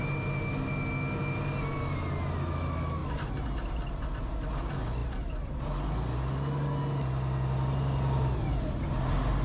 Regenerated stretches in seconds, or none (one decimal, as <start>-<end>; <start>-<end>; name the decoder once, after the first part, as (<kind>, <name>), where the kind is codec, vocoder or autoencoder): none